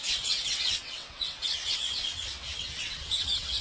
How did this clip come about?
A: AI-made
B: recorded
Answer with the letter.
A